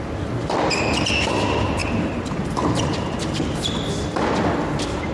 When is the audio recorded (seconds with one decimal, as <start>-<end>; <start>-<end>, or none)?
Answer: 0.0-1.8; 3.9-5.1